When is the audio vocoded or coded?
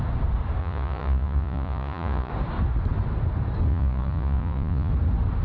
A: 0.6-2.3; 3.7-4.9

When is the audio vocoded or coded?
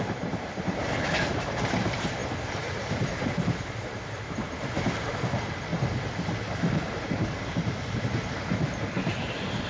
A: 0.0-5.7; 6.4-9.7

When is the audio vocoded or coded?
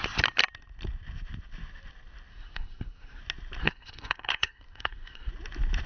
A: 2.3-3.2; 3.6-5.3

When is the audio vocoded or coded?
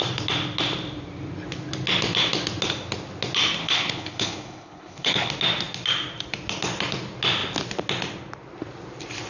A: 3.6-5.3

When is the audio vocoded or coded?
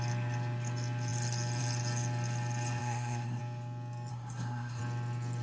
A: 2.8-3.4; 4.1-4.8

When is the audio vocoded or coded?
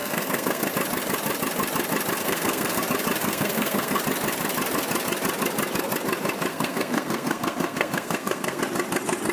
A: 0.0-0.7; 2.2-2.8; 3.2-4.0; 6.5-8.6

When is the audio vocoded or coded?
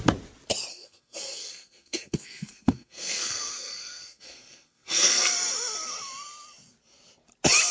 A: 0.7-5.3